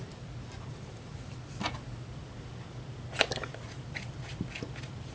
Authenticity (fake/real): real